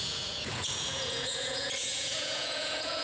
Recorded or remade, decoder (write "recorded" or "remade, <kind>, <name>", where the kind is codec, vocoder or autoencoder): remade, vocoder, Vocos